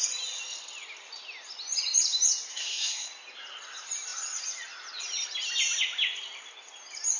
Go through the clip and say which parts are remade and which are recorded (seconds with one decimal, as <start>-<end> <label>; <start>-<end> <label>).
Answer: 0.0-2.5 recorded; 2.5-3.1 remade; 3.1-7.2 recorded